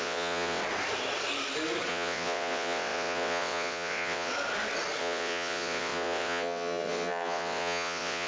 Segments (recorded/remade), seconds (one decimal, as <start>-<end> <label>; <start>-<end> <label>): 0.0-0.6 remade; 0.6-1.9 recorded; 1.9-4.3 remade; 4.3-5.0 recorded; 5.0-8.3 remade